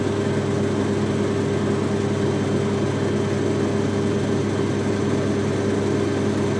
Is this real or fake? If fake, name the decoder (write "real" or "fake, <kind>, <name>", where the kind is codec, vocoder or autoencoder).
real